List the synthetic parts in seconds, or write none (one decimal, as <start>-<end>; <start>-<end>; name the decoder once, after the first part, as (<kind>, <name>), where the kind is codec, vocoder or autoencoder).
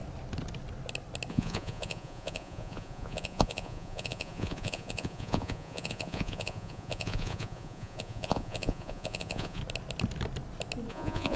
1.3-9.6 (vocoder, Vocos); 10.9-11.4